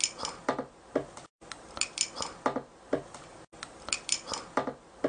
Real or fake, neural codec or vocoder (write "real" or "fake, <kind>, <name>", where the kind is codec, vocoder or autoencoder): real